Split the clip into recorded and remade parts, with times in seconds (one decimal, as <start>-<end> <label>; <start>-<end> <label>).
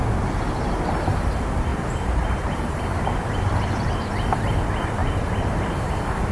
0.0-1.7 recorded; 1.7-2.8 remade; 2.8-5.0 recorded; 5.0-5.8 remade; 5.8-6.3 recorded